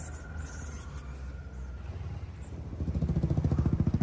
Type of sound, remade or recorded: recorded